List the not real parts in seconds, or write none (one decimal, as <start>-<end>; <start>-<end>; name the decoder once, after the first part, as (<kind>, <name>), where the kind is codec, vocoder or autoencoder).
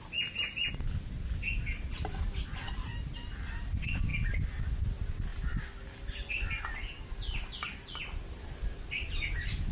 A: none